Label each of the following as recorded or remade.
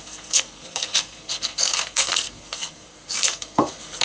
remade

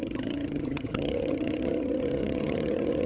remade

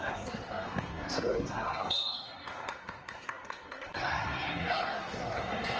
remade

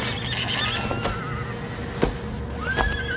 recorded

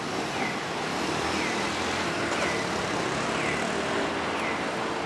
recorded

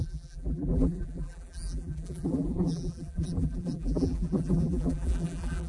remade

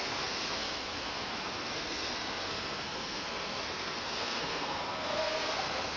remade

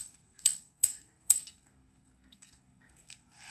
remade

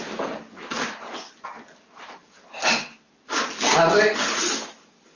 recorded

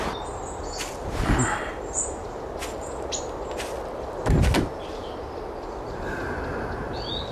recorded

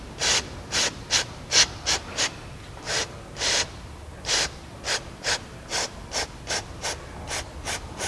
remade